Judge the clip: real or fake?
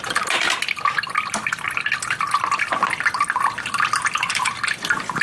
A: real